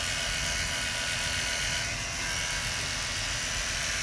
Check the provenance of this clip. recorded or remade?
recorded